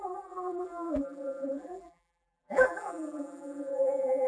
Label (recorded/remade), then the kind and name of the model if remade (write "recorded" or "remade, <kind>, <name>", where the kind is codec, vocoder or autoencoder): remade, vocoder, BigVGAN v2